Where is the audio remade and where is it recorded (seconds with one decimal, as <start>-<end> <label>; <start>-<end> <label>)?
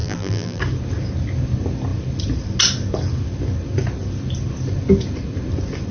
0.0-0.6 remade; 0.6-5.9 recorded